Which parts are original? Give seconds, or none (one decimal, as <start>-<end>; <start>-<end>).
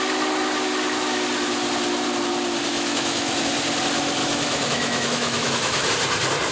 0.0-2.7; 3.5-4.2; 5.9-6.5